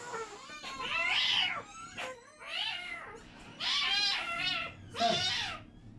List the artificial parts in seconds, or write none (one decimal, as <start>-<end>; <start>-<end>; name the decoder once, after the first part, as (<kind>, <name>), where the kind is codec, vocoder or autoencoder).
none